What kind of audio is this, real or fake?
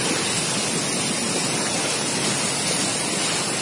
real